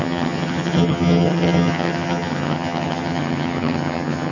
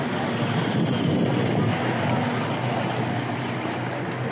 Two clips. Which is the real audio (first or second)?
second